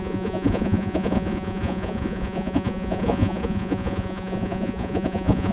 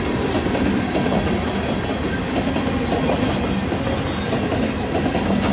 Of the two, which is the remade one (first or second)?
first